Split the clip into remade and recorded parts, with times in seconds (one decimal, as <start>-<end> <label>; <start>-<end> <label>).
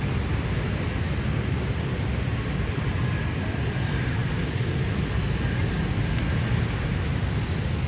0.0-0.9 remade; 0.9-7.9 recorded